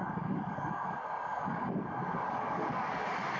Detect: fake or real fake